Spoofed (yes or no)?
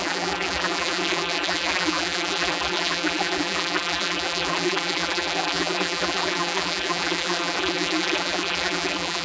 yes